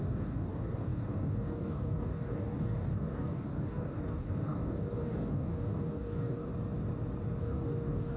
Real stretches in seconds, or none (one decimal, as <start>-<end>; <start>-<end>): 6.5-7.4

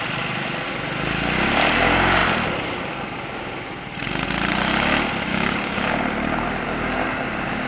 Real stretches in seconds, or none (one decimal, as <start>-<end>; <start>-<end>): 0.0-5.3; 5.9-7.7

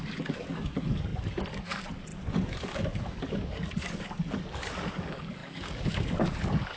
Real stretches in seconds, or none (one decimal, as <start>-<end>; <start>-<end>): none

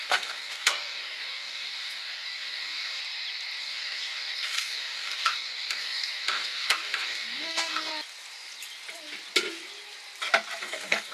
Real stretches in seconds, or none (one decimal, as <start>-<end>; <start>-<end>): 3.0-3.6; 7.9-10.6

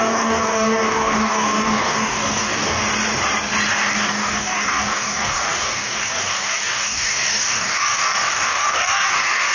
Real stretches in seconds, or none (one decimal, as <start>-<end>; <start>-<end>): 2.8-3.7

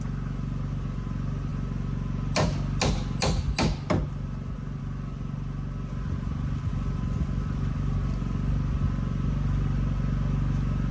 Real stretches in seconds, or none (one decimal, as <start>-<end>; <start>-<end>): 0.0-10.9

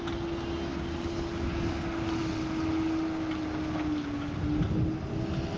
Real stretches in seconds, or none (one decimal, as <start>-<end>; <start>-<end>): 0.0-5.6

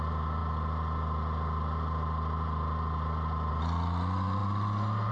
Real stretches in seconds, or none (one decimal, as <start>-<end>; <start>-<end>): 0.0-5.1